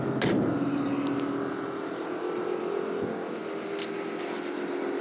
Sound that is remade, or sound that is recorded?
recorded